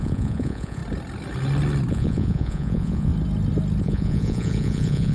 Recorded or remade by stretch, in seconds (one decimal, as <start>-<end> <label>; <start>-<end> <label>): 0.0-0.8 remade; 0.8-1.9 recorded; 1.9-3.1 remade; 3.1-3.8 recorded; 3.8-5.1 remade